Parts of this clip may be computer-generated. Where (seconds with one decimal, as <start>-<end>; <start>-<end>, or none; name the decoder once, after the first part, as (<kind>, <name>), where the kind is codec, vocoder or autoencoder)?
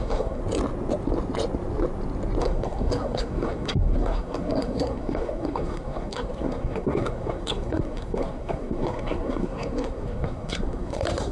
0.0-0.4 (codec, SNAC); 2.4-11.3